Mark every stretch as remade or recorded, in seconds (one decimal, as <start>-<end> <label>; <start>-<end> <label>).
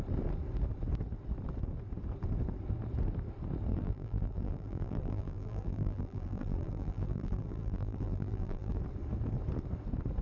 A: 0.0-3.7 recorded; 3.7-8.8 remade; 8.8-10.2 recorded